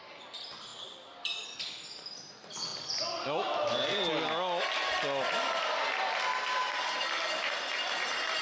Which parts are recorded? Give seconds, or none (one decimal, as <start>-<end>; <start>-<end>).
0.0-8.4